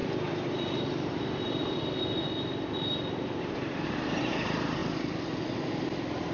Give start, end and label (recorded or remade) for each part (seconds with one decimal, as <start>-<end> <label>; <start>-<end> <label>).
0.0-1.8 remade; 1.8-2.9 recorded; 2.9-4.3 remade; 4.3-6.3 recorded